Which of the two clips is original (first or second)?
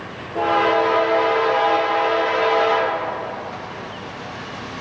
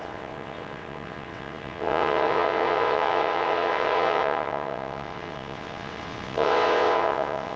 first